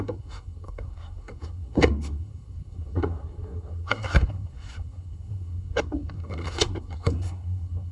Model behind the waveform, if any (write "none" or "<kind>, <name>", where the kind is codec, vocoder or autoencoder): codec, SNAC